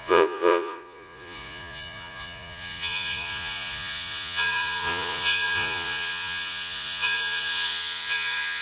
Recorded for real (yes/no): no